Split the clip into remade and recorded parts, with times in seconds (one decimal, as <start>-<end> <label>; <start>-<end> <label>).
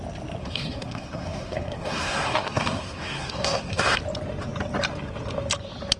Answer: 0.0-0.4 recorded; 0.4-4.0 remade; 4.0-6.0 recorded